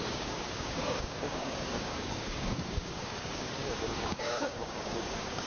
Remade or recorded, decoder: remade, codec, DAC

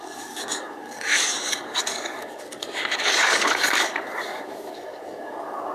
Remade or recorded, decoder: remade, codec, DAC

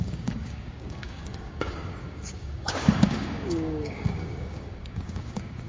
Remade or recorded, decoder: remade, codec, DAC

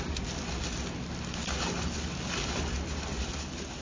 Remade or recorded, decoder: recorded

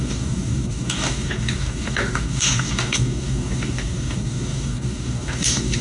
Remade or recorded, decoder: remade, codec, DAC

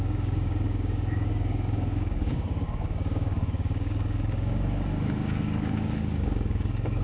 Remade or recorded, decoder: remade, codec, DAC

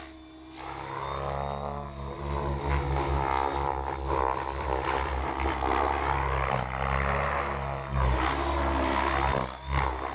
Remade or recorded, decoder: recorded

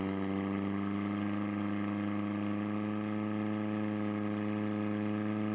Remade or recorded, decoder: recorded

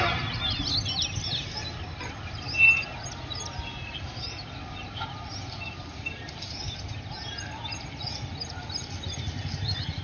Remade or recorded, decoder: recorded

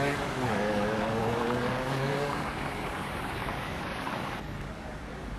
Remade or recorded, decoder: remade, codec, DAC